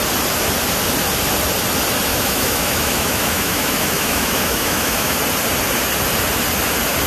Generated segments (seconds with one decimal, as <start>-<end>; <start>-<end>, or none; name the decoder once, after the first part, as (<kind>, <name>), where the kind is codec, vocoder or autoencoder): 2.1-5.2 (autoencoder, DAC-VAE)